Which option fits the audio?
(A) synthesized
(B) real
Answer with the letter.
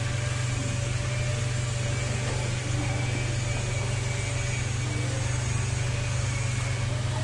B